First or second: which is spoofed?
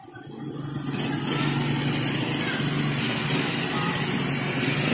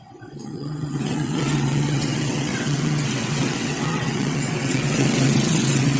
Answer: second